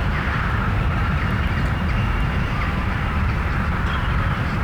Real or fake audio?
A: fake